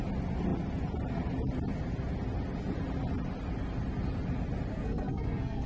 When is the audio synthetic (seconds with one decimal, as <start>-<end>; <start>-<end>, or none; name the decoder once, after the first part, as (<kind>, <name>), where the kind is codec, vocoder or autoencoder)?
4.7-5.7 (codec, SNAC)